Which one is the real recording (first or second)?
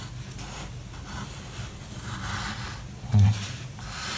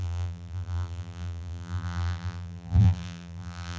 first